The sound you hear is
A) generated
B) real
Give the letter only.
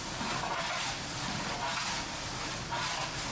B